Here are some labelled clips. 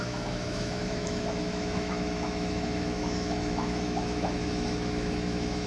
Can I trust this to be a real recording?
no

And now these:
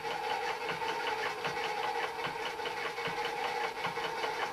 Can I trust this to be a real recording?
yes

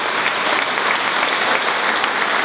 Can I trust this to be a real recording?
yes